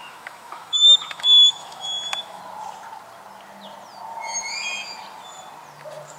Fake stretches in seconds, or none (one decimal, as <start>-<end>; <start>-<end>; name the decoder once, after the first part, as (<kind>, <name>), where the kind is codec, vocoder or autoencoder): 0.0-2.4 (autoencoder, DAC-VAE)